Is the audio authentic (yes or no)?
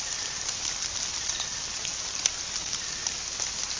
yes